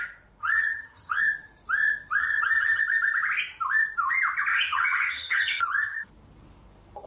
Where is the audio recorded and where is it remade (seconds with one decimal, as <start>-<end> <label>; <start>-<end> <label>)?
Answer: 0.0-0.4 recorded; 0.4-1.2 remade; 1.2-2.2 recorded; 2.2-2.8 remade; 2.8-4.5 recorded; 4.5-6.1 remade; 6.1-7.1 recorded